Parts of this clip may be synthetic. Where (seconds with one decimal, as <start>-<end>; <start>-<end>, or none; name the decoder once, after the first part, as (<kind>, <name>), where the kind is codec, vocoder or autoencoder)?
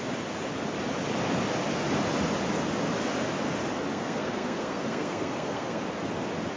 3.9-5.8 (codec, SNAC)